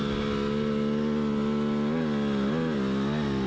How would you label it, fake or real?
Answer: real